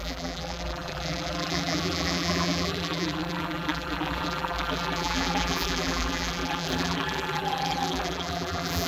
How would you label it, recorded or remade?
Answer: remade